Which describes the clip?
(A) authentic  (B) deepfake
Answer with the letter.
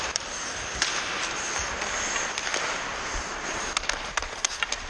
B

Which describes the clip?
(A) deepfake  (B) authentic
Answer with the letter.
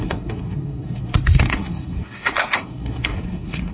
A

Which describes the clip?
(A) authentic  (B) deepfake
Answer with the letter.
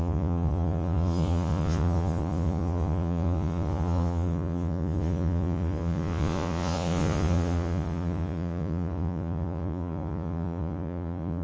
B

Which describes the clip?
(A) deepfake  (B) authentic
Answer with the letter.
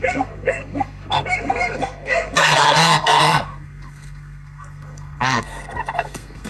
A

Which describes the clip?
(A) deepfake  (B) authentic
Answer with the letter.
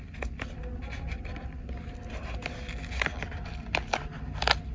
B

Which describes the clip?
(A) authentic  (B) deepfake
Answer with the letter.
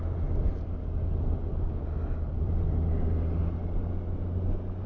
A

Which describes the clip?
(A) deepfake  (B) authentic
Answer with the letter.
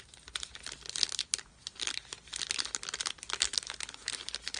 B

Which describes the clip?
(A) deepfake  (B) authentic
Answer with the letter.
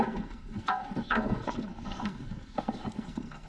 A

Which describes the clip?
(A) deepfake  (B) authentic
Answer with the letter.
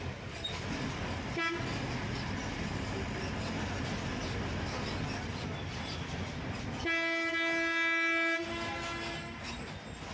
B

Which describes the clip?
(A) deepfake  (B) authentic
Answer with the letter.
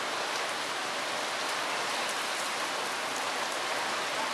B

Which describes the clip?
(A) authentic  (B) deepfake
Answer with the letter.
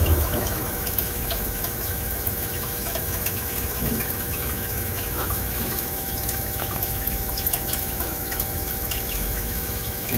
B